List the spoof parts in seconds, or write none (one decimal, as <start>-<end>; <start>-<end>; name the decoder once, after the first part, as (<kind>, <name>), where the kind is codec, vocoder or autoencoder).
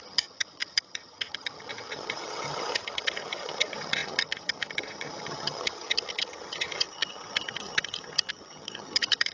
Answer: 0.0-9.3 (vocoder, HiFi-GAN)